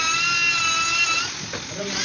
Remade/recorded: recorded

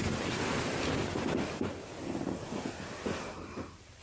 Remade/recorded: recorded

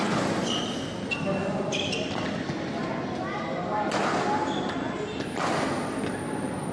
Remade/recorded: recorded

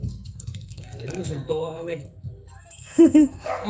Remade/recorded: remade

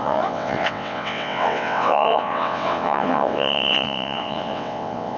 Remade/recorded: remade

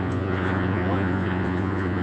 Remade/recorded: remade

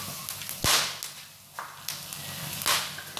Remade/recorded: recorded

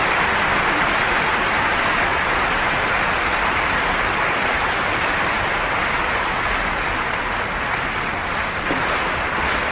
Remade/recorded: recorded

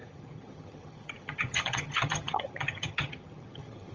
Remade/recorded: remade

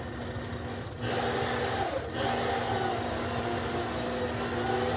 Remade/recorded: recorded